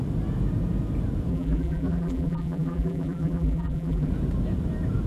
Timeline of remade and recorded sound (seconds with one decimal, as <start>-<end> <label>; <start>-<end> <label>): 0.0-1.3 recorded; 1.3-4.1 remade; 4.1-5.1 recorded